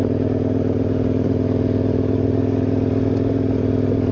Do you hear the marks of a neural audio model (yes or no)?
no